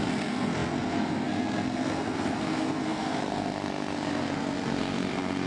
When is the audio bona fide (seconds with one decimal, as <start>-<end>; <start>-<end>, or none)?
none